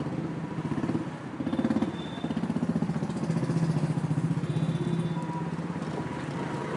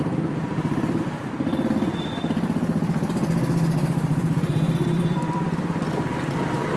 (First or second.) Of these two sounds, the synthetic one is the second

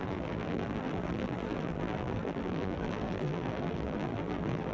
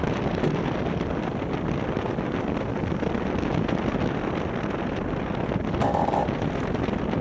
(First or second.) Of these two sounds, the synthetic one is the first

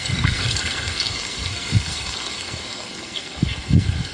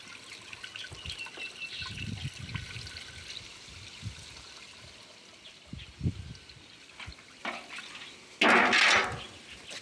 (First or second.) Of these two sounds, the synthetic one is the first